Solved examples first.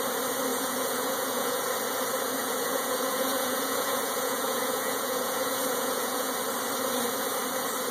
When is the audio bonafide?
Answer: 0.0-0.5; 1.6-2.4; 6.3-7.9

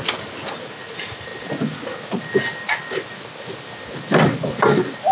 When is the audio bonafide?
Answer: 0.0-5.1